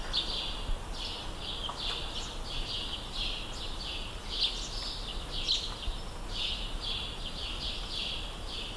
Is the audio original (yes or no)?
yes